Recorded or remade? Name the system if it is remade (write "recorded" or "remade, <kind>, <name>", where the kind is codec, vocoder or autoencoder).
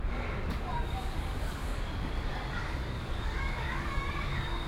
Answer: remade, codec, DAC